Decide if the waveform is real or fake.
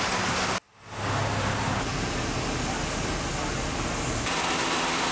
real